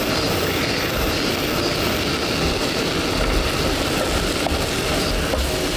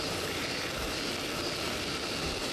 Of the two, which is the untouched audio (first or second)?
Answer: first